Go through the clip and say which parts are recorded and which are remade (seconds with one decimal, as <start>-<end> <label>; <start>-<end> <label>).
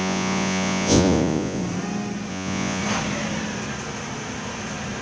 0.0-1.6 remade; 1.6-2.3 recorded; 2.3-2.8 remade; 2.8-5.0 recorded